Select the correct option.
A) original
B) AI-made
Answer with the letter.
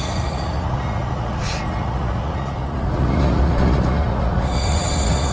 B